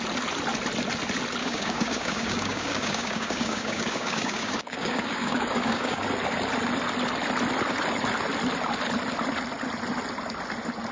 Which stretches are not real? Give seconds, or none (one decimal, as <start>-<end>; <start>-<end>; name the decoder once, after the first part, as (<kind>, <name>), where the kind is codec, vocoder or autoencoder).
1.4-6.0 (codec, DAC)